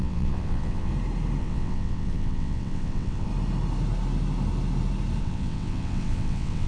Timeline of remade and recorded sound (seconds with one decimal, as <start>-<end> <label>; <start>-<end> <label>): 0.0-0.9 remade; 0.9-1.4 recorded; 1.4-3.3 remade; 3.3-5.2 recorded; 5.2-6.7 remade